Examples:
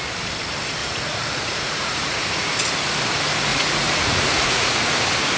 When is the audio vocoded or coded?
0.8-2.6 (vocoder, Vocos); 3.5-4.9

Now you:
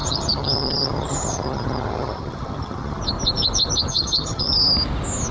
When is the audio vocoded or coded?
0.0-3.0 (vocoder, HiFi-GAN); 3.9-4.5